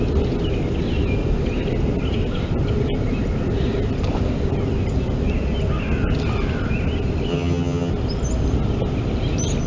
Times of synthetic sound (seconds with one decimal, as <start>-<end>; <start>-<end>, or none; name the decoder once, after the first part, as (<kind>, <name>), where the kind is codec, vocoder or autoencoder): 7.3-7.9 (vocoder, HiFi-GAN)